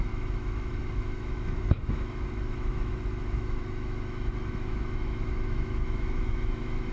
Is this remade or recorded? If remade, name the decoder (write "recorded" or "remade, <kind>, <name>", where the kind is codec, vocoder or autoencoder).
remade, autoencoder, DAC-VAE